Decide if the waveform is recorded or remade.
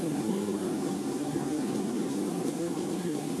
remade